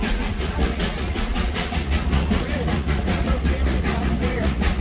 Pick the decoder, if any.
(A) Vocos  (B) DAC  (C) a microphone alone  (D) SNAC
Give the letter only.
A